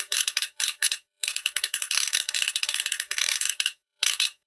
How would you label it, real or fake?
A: fake